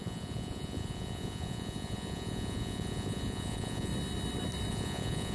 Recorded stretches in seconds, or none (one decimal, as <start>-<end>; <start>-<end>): 3.9-4.7